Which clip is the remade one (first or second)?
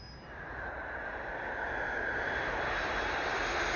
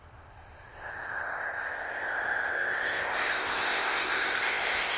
second